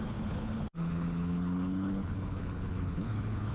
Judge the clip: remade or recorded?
remade